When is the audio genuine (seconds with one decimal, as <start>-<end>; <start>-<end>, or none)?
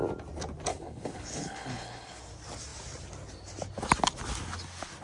0.0-0.7; 2.2-5.0